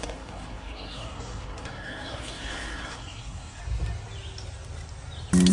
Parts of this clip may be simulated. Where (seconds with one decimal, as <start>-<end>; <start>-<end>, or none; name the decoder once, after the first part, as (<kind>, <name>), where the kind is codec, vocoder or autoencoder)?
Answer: 0.0-3.6 (codec, SNAC)

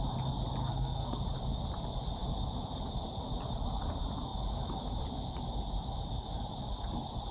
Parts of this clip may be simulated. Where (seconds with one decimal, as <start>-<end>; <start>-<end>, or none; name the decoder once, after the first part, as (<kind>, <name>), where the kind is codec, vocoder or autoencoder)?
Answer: 0.6-1.2 (codec, SNAC)

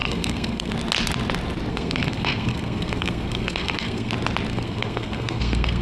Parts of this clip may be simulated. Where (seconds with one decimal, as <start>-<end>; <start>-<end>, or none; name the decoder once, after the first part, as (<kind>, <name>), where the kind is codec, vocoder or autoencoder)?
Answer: 0.0-0.7 (codec, SNAC); 1.7-4.1; 4.5-5.8

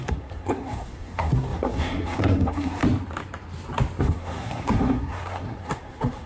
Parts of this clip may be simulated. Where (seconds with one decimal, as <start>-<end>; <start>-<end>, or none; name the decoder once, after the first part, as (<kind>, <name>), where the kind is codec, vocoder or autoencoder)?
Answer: 0.0-2.8 (codec, SNAC); 4.0-6.3

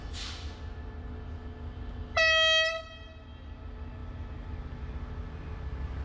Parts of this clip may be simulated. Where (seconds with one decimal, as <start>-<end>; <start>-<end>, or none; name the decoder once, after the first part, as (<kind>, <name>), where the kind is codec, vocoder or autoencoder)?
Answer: none